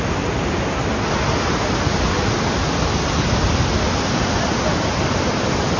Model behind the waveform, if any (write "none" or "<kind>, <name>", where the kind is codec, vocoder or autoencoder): none